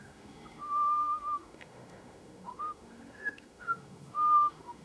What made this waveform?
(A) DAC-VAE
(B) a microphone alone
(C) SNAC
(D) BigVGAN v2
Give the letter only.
A